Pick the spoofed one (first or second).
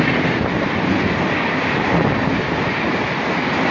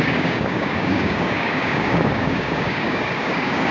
second